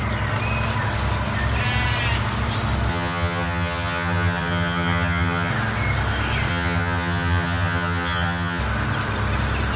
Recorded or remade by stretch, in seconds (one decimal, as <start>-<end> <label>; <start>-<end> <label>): 0.0-2.9 recorded; 2.9-5.5 remade; 5.5-6.5 recorded; 6.5-8.6 remade; 8.6-9.8 recorded